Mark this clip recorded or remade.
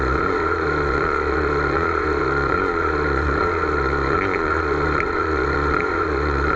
remade